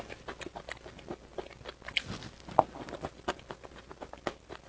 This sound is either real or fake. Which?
real